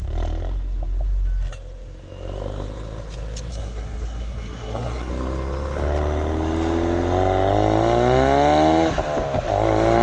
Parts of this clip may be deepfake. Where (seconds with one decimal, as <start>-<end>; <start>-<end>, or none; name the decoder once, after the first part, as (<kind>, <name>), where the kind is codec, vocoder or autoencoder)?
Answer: 3.5-5.1 (codec, SNAC)